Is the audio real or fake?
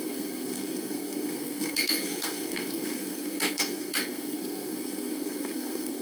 fake